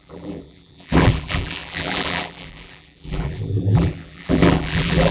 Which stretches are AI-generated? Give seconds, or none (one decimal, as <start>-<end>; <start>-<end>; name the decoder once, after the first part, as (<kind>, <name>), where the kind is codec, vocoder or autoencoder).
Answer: 0.0-5.1 (vocoder, BigVGAN v2)